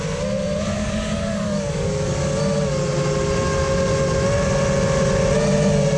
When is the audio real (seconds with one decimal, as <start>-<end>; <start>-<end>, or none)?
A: 0.0-0.7; 2.2-6.0